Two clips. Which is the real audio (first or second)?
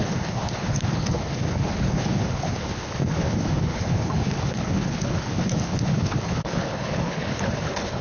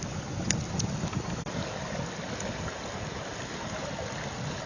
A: second